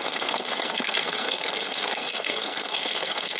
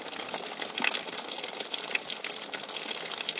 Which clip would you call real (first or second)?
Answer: second